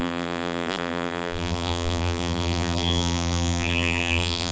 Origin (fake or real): fake